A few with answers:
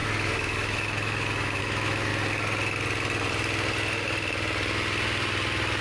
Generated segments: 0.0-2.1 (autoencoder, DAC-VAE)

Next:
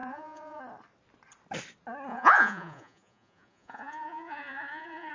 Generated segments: 0.0-0.6 (vocoder, Vocos); 2.1-5.1

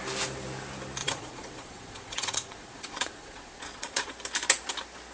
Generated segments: 1.0-4.1 (vocoder, Vocos)

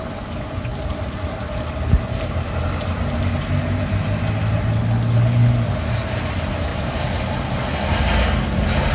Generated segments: none

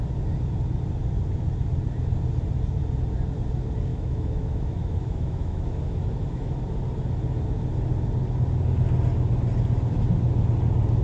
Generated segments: 3.9-6.6 (autoencoder, DAC-VAE)

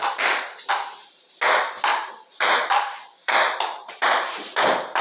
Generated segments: 1.9-5.0 (vocoder, BigVGAN v2)

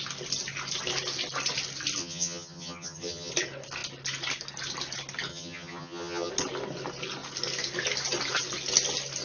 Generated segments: 2.0-3.3 (vocoder, HiFi-GAN); 5.3-6.3

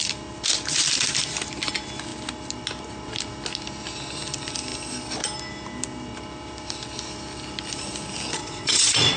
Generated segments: 8.4-9.2 (vocoder, WaveNeXt)